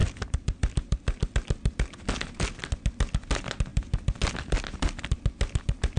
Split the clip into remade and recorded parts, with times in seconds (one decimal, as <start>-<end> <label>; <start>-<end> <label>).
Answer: 0.0-1.3 remade; 1.3-6.0 recorded